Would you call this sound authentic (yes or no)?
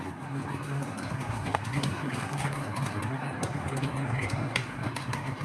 no